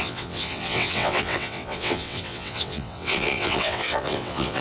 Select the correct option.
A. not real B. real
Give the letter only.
A